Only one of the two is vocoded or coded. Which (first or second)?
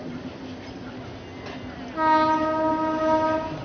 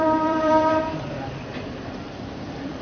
second